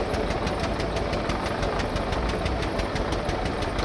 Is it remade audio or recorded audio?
recorded